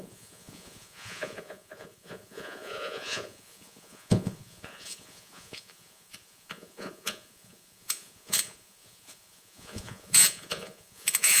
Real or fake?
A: fake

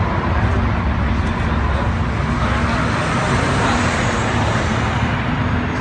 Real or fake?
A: real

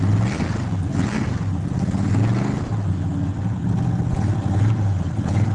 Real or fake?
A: real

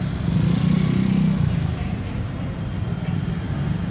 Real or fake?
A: real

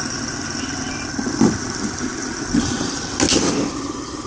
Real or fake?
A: real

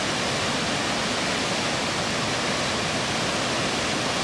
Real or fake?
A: real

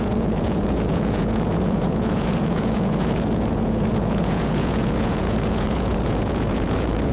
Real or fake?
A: fake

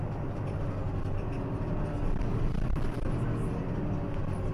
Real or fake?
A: real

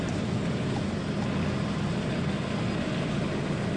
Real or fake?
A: real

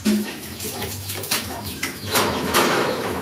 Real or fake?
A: fake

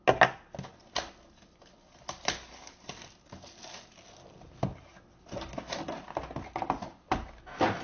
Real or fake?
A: real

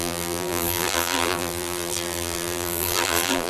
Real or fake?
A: fake